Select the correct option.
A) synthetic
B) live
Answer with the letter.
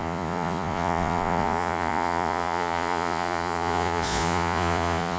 A